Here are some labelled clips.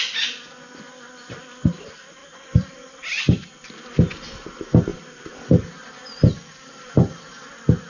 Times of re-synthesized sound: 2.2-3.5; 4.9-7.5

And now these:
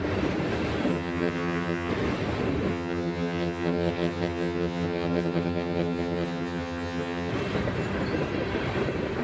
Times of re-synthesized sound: 0.9-1.9; 2.7-7.3

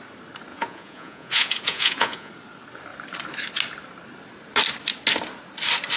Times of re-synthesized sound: 0.5-2.3